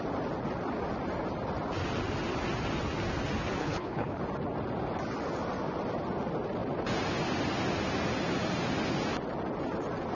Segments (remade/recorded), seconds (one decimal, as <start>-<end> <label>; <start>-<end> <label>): 0.0-3.6 recorded; 3.6-4.2 remade; 4.2-10.1 recorded